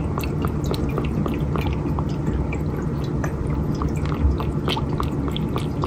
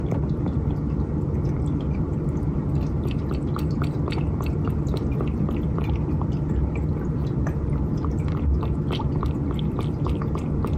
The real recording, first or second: first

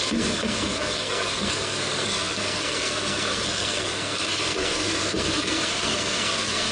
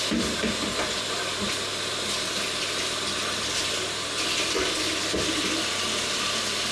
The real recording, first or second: second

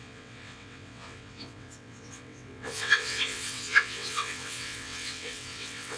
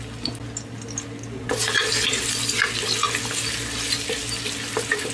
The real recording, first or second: second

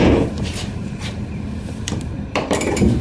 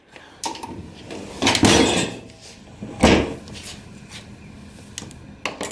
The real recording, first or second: second